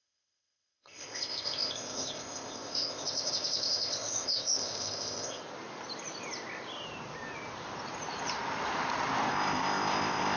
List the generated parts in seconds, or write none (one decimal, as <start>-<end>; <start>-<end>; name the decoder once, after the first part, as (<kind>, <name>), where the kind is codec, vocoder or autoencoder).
0.0-5.4 (codec, ZipCodec); 9.3-10.4